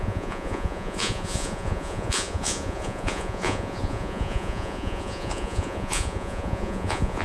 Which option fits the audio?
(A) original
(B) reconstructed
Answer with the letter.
B